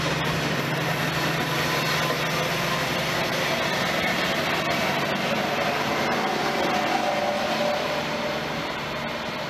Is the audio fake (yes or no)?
no